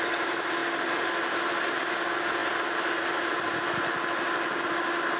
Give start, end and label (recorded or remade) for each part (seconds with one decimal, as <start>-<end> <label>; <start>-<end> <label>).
0.0-5.2 recorded